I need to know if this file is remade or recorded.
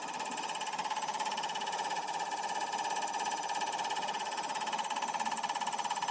recorded